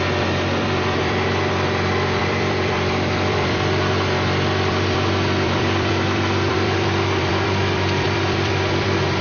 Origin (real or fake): fake